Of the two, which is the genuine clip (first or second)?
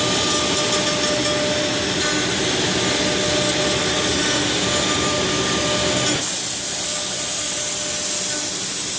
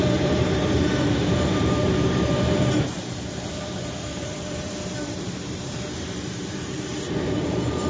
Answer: first